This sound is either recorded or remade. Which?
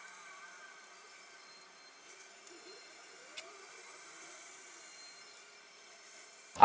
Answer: recorded